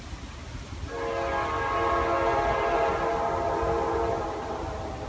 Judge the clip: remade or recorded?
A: recorded